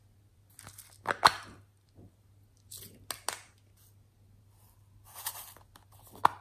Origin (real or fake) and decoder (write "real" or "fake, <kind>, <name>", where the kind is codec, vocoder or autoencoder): real